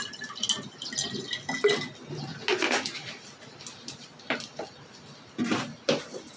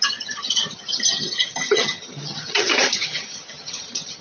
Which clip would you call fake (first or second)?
second